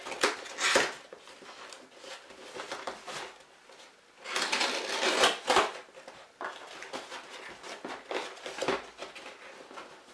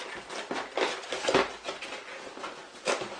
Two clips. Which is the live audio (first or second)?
first